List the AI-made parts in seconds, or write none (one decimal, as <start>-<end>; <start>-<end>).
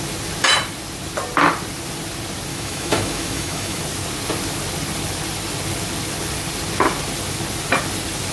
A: 2.5-3.8